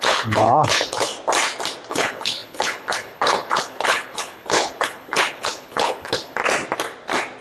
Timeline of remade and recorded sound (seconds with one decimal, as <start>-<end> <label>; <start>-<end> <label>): 0.0-1.1 remade; 1.1-1.9 recorded; 1.9-6.4 remade; 6.4-7.4 recorded